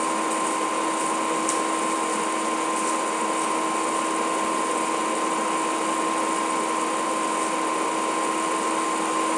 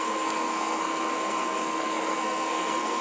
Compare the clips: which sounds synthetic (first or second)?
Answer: second